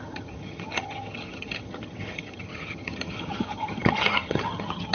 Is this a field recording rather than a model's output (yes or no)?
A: no